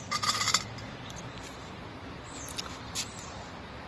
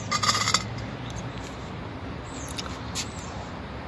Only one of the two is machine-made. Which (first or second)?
first